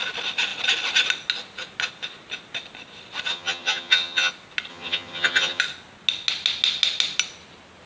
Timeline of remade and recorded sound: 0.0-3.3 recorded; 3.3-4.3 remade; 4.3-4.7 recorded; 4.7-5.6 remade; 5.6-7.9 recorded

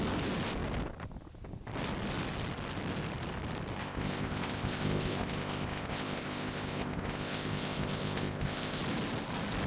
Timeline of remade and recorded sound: 0.0-3.8 recorded; 3.8-8.8 remade; 8.8-9.7 recorded

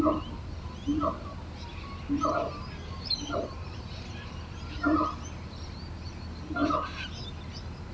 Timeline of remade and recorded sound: 0.0-7.9 recorded

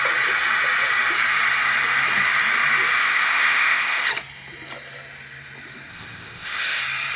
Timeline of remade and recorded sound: 0.0-3.0 recorded; 3.0-4.1 remade; 4.1-5.9 recorded; 5.9-6.8 remade; 6.8-7.2 recorded

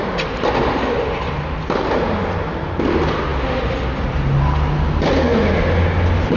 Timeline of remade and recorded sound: 0.0-6.4 recorded

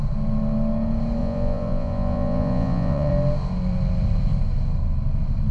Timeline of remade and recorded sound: 0.0-1.2 recorded; 1.2-3.1 remade; 3.1-5.5 recorded

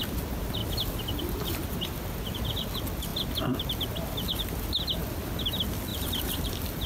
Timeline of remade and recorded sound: 0.0-0.6 recorded; 0.6-1.7 remade; 1.7-5.9 recorded; 5.9-6.9 remade